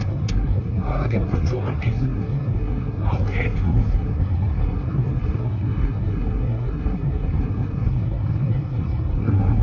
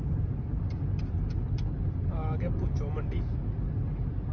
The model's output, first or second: first